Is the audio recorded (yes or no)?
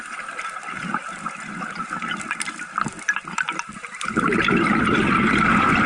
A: yes